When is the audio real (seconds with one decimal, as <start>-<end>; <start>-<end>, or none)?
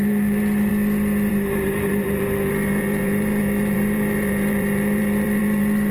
0.7-1.3